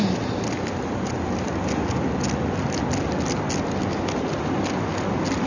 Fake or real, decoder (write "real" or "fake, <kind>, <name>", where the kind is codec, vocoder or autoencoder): real